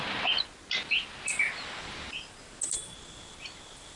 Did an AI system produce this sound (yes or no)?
no